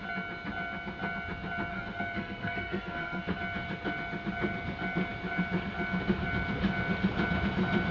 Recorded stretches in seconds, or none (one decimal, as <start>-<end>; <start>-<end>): 0.0-1.7; 3.2-7.9